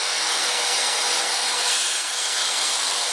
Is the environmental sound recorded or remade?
remade